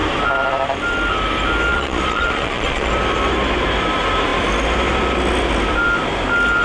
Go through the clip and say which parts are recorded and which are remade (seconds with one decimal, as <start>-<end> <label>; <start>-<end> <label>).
0.0-1.7 recorded; 1.7-2.9 remade; 2.9-6.6 recorded